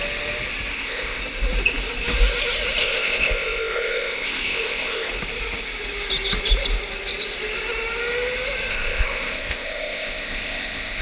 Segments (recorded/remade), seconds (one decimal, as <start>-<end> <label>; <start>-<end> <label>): 0.0-0.7 recorded; 0.7-1.2 remade; 1.2-2.8 recorded; 2.8-5.1 remade; 5.1-8.7 recorded; 8.7-11.0 remade